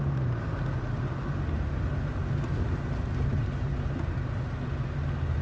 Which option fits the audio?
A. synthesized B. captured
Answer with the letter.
B